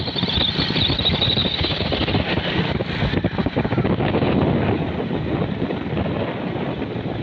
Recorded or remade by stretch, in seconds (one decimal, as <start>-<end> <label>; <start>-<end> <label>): 0.0-1.4 recorded; 1.4-1.9 remade; 1.9-3.4 recorded; 3.4-4.3 remade; 4.3-7.2 recorded